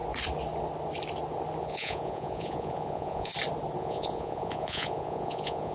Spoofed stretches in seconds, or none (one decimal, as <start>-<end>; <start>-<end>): 1.6-3.3; 3.8-5.7